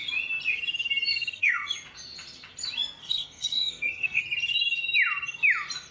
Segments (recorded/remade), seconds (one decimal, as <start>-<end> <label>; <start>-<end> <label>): 0.0-1.1 recorded; 1.1-1.7 remade; 1.7-3.0 recorded; 3.0-4.2 remade; 4.2-5.9 recorded